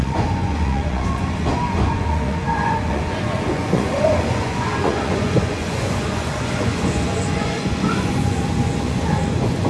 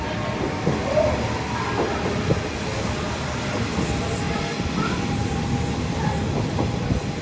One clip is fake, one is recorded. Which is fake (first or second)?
first